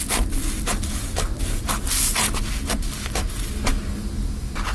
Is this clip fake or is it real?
real